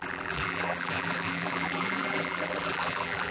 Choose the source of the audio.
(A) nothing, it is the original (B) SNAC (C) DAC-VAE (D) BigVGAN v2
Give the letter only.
D